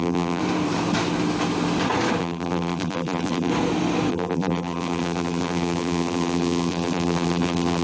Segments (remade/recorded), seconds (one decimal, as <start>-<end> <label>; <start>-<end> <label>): 0.0-0.4 remade; 0.4-2.2 recorded; 2.2-3.5 remade; 3.5-4.1 recorded; 4.1-7.8 remade